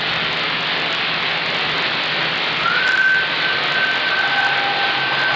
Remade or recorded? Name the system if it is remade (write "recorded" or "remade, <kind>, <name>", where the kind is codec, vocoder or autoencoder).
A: recorded